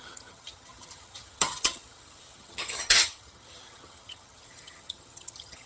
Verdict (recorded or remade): remade